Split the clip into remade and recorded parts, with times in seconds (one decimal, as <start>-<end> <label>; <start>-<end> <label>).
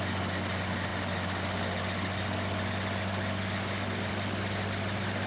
0.0-5.3 recorded